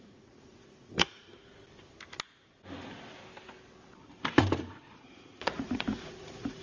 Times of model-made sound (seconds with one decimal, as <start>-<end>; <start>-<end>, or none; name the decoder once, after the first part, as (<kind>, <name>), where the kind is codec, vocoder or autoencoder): 0.0-1.3 (vocoder, Vocos); 4.6-6.6